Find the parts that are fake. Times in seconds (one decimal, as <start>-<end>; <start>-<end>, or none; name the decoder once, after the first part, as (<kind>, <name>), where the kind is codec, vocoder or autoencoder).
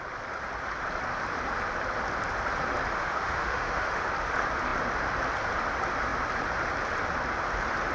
2.9-4.1 (autoencoder, DAC-VAE)